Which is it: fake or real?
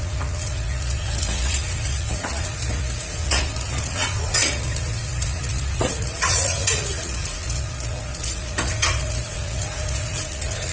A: fake